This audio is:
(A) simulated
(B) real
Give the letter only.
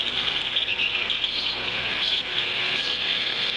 A